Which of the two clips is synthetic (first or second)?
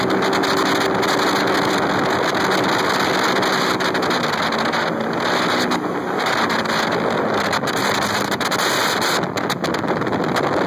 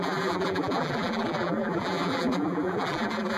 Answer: second